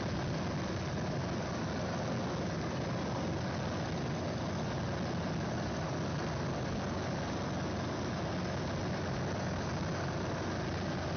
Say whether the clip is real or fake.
real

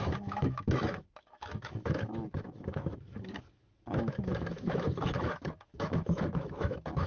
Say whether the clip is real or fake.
fake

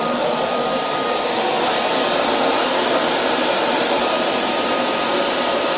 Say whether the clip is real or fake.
real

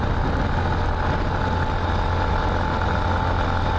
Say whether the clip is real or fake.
real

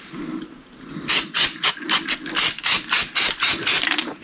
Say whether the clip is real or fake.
real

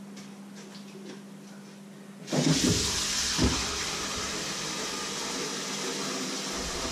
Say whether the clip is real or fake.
real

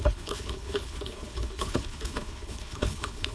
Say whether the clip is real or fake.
fake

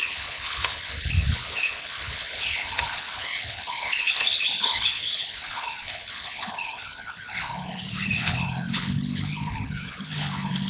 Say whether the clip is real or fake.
fake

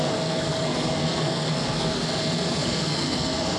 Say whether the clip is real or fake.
fake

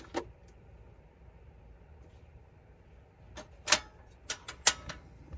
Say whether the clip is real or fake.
real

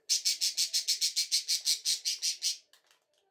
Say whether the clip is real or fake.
real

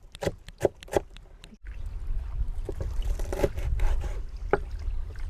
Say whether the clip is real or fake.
real